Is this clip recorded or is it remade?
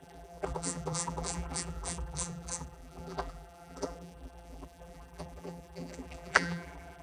remade